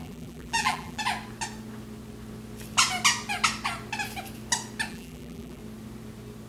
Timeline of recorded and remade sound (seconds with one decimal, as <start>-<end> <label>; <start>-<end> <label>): 0.0-1.0 remade; 1.0-4.9 recorded; 4.9-5.6 remade; 5.6-6.5 recorded